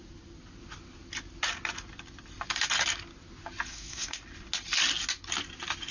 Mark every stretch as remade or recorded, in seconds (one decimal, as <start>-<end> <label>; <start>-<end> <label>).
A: 0.0-3.7 recorded; 3.7-4.2 remade; 4.2-5.9 recorded